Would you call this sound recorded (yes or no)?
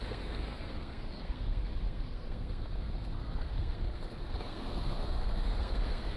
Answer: no